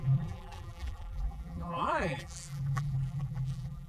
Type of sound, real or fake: fake